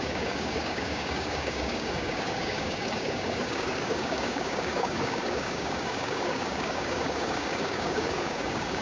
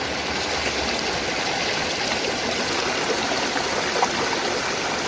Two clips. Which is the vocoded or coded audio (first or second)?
first